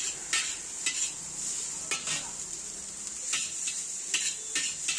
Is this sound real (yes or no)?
yes